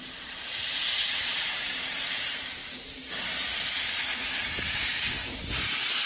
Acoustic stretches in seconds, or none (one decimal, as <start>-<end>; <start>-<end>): 2.6-4.4; 5.2-6.1